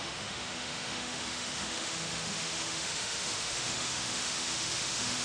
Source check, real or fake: fake